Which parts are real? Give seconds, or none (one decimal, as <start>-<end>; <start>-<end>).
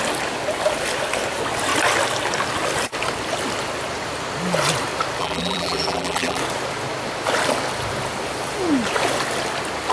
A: 0.0-5.2; 6.4-9.9